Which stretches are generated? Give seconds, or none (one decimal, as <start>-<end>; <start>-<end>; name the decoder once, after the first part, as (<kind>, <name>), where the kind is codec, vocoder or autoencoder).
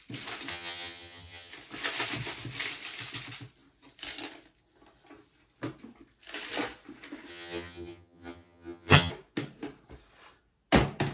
0.5-1.5 (vocoder, HiFi-GAN); 7.3-9.1